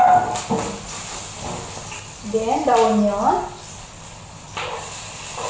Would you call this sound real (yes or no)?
yes